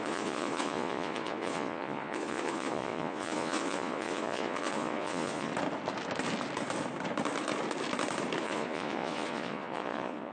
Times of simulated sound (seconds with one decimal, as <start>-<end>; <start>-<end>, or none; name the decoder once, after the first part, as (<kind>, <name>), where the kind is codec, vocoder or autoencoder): 0.0-5.5 (vocoder, Vocos); 8.4-10.3